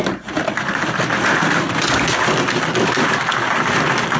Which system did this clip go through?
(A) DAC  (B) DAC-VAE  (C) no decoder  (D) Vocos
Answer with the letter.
C